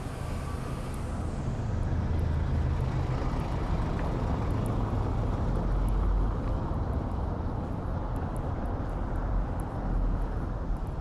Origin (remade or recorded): recorded